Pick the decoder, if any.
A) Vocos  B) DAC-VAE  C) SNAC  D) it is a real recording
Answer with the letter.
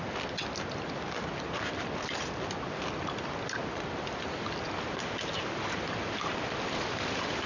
D